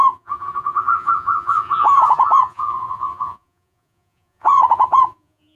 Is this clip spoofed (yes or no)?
yes